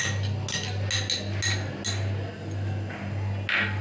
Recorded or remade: recorded